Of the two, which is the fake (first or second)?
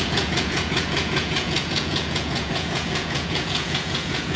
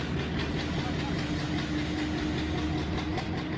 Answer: first